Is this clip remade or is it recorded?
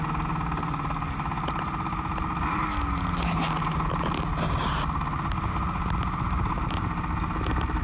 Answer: recorded